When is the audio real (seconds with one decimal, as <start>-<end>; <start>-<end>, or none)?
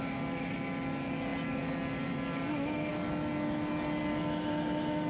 0.0-5.1